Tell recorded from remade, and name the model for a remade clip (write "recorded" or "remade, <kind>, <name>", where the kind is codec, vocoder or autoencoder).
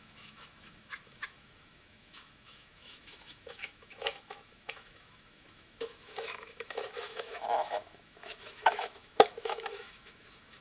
remade, autoencoder, DAC-VAE